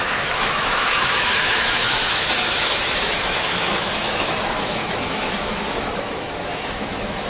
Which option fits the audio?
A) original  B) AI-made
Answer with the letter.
B